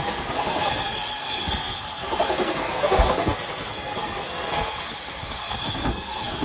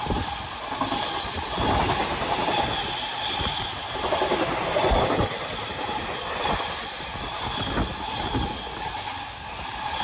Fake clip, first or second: first